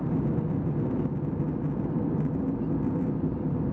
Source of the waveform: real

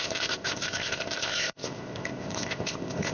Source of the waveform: fake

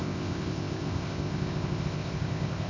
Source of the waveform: fake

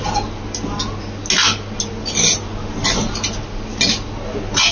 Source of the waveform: real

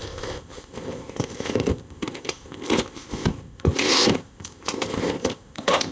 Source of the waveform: fake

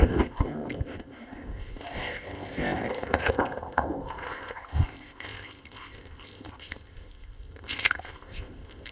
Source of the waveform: fake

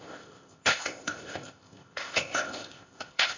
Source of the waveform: fake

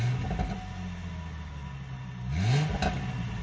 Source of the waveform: real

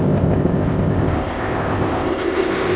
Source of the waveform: fake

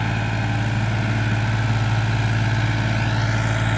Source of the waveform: real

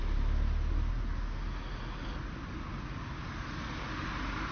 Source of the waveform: real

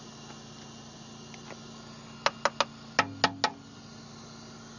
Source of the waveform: real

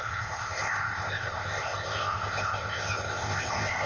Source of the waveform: fake